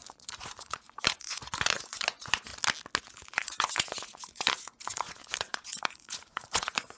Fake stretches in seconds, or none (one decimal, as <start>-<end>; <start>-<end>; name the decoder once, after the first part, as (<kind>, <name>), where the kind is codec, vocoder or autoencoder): 0.0-2.5 (vocoder, Vocos); 3.0-7.0